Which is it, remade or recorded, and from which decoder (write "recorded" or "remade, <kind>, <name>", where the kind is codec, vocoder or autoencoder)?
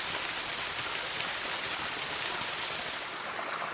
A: recorded